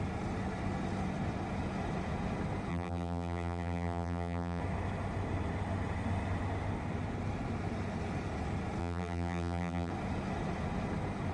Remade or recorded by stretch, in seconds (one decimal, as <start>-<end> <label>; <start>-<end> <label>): 0.0-2.7 recorded; 2.7-4.6 remade; 4.6-8.8 recorded; 8.8-9.9 remade; 9.9-11.3 recorded